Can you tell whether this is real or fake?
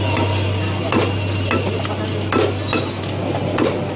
real